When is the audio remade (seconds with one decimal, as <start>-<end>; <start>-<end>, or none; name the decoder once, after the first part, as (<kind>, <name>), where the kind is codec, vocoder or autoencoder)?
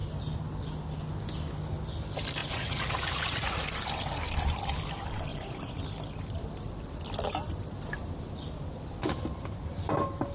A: 2.4-3.6 (vocoder, Vocos); 5.3-5.8